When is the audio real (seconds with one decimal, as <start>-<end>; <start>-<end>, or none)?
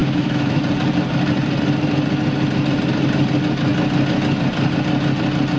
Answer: 0.6-5.6